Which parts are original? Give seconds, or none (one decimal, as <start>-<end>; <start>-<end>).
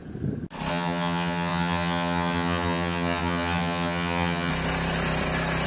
0.0-0.7; 4.5-5.7